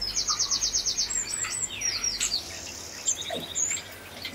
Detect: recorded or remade recorded